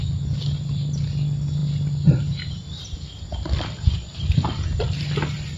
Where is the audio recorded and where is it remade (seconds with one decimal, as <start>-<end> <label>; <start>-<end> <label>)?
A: 0.0-5.6 recorded